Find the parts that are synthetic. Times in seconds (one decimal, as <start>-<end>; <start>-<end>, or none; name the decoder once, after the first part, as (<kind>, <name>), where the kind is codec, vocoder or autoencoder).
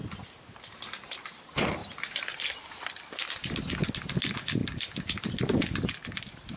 none